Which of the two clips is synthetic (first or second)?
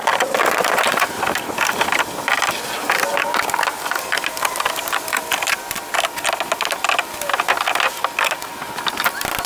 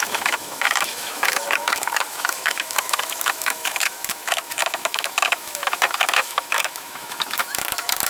second